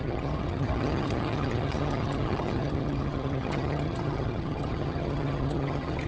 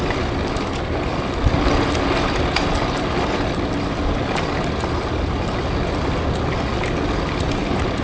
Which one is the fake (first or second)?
first